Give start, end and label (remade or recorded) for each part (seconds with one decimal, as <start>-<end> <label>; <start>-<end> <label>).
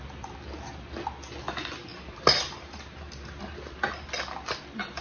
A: 0.0-1.9 recorded; 1.9-4.1 remade; 4.1-5.0 recorded